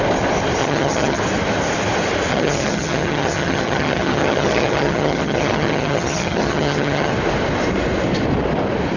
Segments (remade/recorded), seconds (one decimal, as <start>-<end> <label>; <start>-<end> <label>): 0.0-0.6 recorded; 0.6-1.2 remade; 1.2-2.3 recorded; 2.3-7.1 remade; 7.1-9.0 recorded

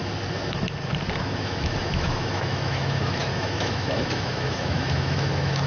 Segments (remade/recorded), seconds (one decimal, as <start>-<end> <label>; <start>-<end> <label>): 0.0-1.2 recorded; 1.2-5.7 remade